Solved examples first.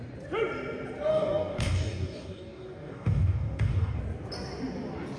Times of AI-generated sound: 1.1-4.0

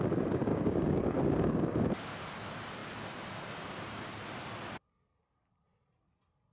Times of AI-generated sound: 0.5-1.9

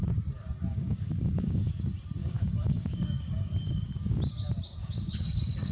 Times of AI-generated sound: 0.7-1.7; 2.2-4.2; 4.8-5.7